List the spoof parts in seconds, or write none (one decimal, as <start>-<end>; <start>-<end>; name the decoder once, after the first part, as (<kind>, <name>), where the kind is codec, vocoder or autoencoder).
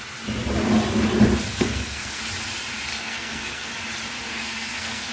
1.5-2.2 (codec, SNAC); 2.9-3.7; 4.3-5.1